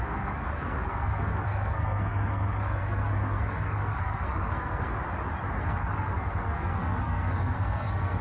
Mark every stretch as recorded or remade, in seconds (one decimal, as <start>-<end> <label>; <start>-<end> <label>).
0.0-5.0 remade; 5.0-5.6 recorded; 5.6-8.2 remade